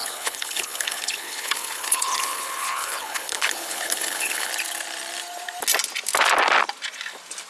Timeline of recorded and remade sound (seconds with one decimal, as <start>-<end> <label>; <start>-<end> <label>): 0.0-4.5 remade; 4.5-7.5 recorded